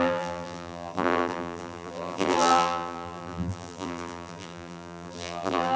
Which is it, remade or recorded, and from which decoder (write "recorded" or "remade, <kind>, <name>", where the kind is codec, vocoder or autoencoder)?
remade, vocoder, BigVGAN v2